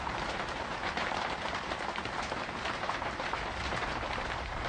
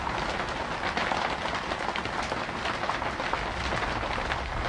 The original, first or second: second